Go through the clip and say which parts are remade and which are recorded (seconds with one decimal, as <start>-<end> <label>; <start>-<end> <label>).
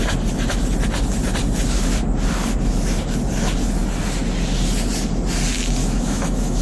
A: 0.0-5.8 recorded; 5.8-6.6 remade